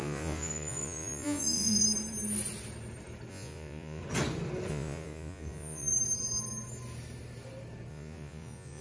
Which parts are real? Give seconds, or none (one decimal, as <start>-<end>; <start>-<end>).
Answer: 1.8-3.3; 4.0-4.7; 5.9-7.9